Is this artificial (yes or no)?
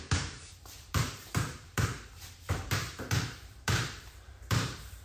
yes